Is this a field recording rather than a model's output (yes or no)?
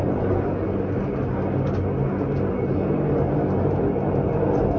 yes